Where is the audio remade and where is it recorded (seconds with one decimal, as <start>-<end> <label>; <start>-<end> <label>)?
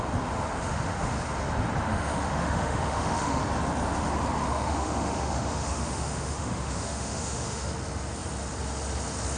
0.0-0.6 recorded; 0.6-1.1 remade; 1.1-1.9 recorded; 1.9-3.4 remade; 3.4-4.5 recorded; 4.5-7.7 remade; 7.7-9.4 recorded